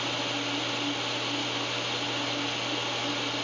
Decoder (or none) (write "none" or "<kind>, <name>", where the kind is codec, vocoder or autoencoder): none